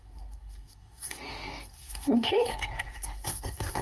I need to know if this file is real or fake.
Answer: fake